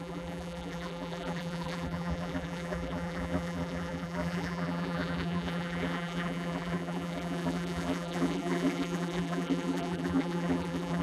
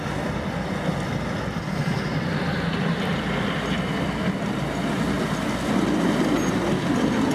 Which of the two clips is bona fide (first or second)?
second